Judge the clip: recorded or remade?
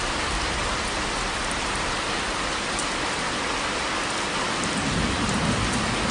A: recorded